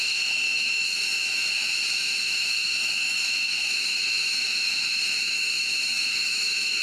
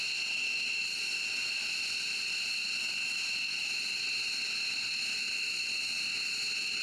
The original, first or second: second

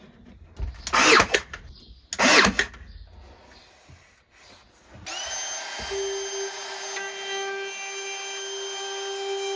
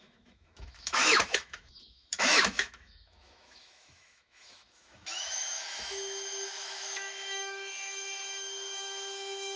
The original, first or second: first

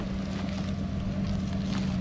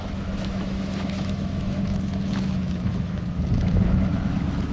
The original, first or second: first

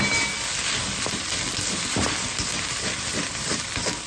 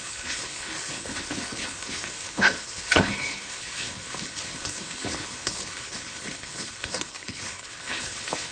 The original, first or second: first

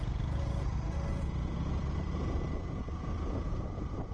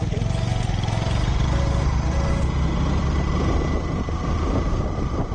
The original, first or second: second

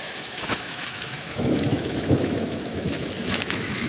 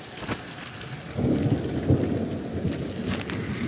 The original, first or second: second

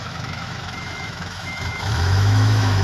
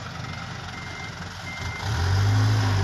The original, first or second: second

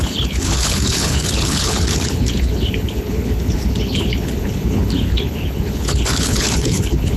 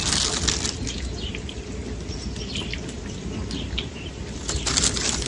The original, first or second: second